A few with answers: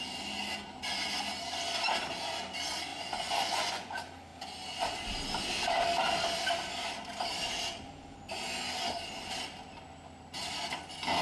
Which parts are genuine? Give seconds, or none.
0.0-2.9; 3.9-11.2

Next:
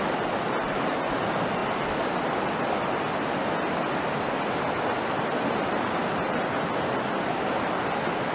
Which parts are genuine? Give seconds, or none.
0.0-8.3

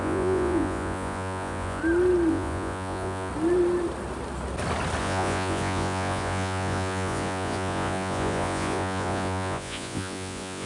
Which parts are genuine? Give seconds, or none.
1.8-2.3; 3.3-5.0